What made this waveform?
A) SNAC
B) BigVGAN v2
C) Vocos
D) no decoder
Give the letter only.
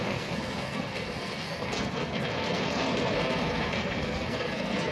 A